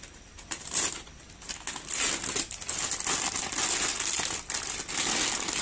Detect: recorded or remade recorded